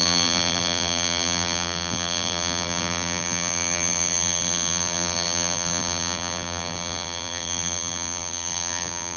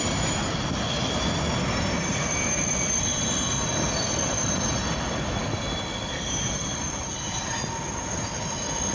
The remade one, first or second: first